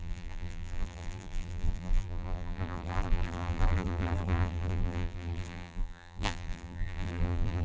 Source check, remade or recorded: remade